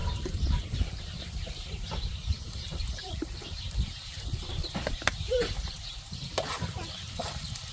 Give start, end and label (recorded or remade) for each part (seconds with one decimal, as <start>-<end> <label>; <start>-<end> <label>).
0.0-7.7 remade